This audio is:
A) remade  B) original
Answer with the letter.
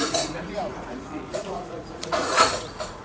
A